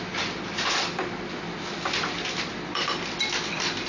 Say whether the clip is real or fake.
real